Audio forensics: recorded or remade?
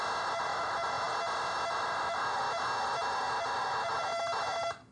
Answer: recorded